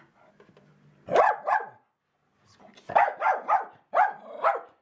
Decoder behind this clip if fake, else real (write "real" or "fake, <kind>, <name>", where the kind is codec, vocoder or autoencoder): real